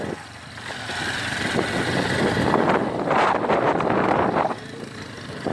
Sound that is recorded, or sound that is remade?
recorded